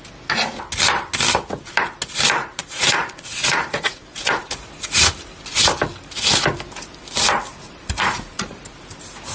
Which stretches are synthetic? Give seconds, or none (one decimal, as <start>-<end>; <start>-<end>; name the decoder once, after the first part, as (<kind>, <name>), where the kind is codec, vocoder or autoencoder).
2.4-5.1 (vocoder, Vocos); 7.5-8.6